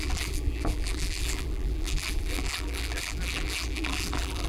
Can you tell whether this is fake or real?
fake